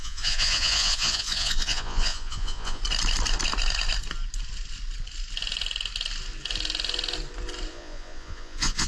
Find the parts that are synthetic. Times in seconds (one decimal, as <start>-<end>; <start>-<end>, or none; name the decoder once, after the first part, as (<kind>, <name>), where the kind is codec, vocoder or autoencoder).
0.0-2.8 (vocoder, Vocos); 7.7-8.9